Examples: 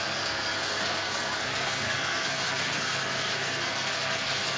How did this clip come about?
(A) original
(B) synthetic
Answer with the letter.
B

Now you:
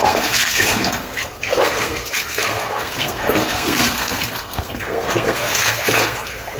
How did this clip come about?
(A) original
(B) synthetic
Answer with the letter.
B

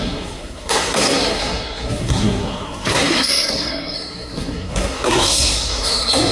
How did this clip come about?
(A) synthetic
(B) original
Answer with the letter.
A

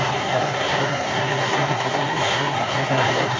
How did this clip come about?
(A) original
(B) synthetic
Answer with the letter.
B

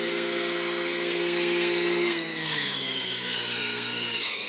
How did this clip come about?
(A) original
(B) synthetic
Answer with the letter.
B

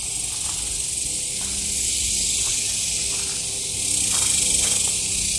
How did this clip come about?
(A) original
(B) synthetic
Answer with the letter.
A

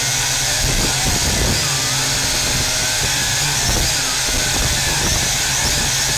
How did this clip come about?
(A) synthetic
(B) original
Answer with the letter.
B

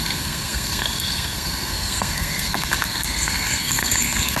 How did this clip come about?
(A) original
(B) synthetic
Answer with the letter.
B